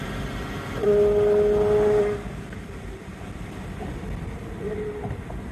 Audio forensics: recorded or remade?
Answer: recorded